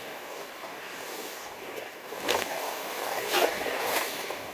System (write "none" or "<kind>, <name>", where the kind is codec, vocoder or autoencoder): codec, DAC